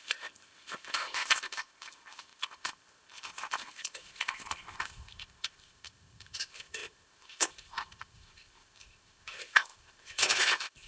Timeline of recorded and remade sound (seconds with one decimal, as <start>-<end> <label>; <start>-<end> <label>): 0.0-10.9 remade

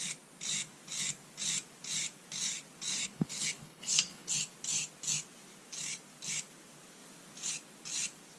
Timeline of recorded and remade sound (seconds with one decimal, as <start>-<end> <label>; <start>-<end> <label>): 0.0-2.9 recorded; 2.9-4.3 remade; 4.3-8.4 recorded

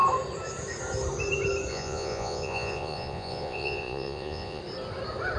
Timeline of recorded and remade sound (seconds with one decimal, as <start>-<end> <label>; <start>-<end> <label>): 0.0-1.7 recorded; 1.7-4.6 remade; 4.6-5.4 recorded

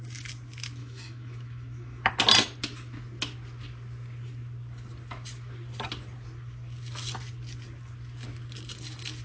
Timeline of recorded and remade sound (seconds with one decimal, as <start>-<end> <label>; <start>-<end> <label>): 0.0-0.8 recorded; 0.8-2.0 remade; 2.0-9.2 recorded

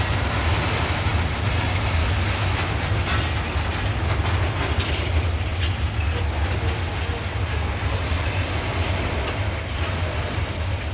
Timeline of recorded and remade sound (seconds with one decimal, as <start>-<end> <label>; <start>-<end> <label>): 0.0-10.9 recorded